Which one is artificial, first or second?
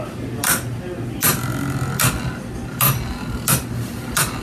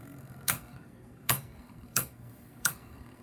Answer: second